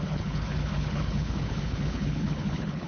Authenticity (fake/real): fake